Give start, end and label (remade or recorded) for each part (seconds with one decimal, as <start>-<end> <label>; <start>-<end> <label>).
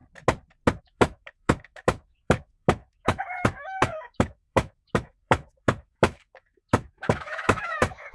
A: 0.0-0.8 recorded; 0.8-8.1 remade